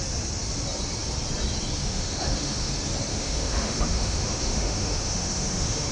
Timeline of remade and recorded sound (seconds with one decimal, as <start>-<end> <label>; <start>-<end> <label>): 0.0-1.8 recorded; 1.8-2.7 remade; 2.7-3.1 recorded; 3.1-5.9 remade